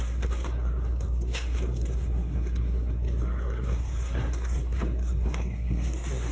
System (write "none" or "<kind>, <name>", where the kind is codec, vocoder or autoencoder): codec, SNAC